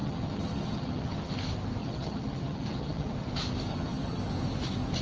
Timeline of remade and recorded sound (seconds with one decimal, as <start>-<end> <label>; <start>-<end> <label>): 0.0-1.3 remade; 1.3-1.8 recorded; 1.8-3.1 remade; 3.1-3.7 recorded; 3.7-4.2 remade; 4.2-5.0 recorded